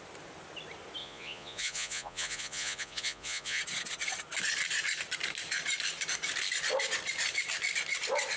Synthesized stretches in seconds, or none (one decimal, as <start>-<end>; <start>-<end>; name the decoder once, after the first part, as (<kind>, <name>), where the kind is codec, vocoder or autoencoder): 1.0-3.6 (vocoder, Vocos)